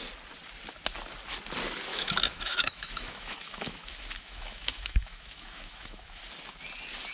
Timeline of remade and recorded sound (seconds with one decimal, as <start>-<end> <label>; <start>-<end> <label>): 0.0-1.9 recorded; 1.9-6.2 remade; 6.2-7.1 recorded